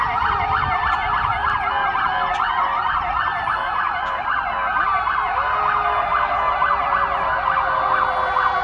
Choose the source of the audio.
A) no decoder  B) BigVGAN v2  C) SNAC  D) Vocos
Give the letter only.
A